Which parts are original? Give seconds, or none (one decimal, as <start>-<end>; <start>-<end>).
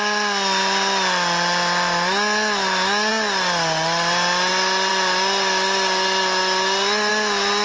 0.0-7.6